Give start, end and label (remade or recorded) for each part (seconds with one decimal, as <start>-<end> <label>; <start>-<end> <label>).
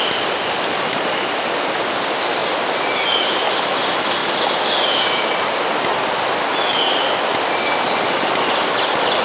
0.0-9.2 recorded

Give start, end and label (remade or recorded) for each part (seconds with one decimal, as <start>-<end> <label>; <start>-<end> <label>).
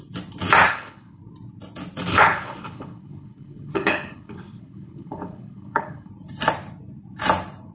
0.0-0.7 recorded; 0.7-1.2 remade; 1.2-2.1 recorded; 2.1-6.1 remade; 6.1-7.7 recorded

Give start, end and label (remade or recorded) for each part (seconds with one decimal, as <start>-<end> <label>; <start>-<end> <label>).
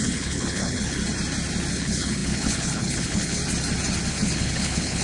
0.0-1.0 remade; 1.0-1.7 recorded; 1.7-3.4 remade; 3.4-4.1 recorded; 4.1-5.0 remade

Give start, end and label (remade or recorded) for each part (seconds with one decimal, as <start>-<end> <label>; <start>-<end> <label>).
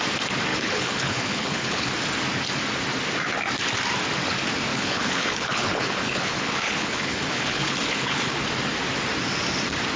0.0-0.5 recorded; 0.5-1.9 remade; 1.9-4.7 recorded; 4.7-8.4 remade; 8.4-10.0 recorded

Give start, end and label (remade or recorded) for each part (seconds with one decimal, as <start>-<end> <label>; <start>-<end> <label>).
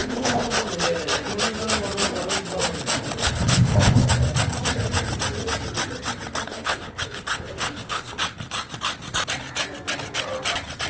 0.0-0.7 remade; 0.7-3.2 recorded; 3.2-4.1 remade; 4.1-6.5 recorded; 6.5-8.2 remade; 8.2-10.9 recorded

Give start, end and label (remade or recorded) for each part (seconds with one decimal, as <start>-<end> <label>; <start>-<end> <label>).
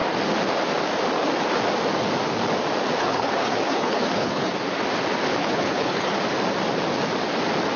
0.0-3.0 recorded; 3.0-4.5 remade; 4.5-5.4 recorded; 5.4-6.2 remade; 6.2-7.8 recorded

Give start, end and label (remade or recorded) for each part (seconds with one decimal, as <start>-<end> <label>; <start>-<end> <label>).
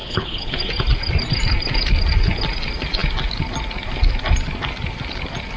0.0-0.6 remade; 0.6-5.6 recorded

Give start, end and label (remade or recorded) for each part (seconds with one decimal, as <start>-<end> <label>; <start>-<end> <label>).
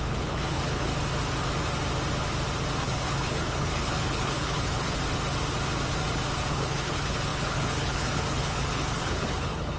0.0-0.9 remade; 0.9-2.8 recorded; 2.8-5.0 remade; 5.0-6.5 recorded; 6.5-9.8 remade